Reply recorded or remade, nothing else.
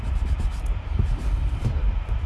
remade